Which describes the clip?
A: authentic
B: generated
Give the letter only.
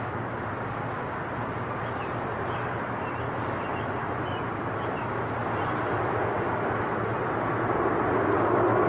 A